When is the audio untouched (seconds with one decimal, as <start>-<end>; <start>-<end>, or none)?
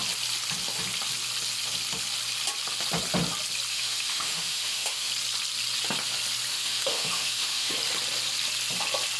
0.0-3.7; 5.1-6.5; 7.7-9.2